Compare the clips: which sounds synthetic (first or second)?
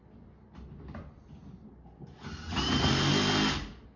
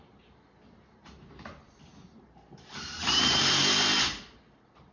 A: second